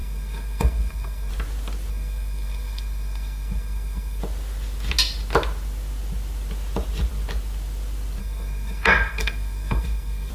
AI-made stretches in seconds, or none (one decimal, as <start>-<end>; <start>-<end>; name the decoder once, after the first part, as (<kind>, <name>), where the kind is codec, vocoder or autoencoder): 0.0-1.3 (codec, SNAC); 1.9-4.2; 8.2-10.3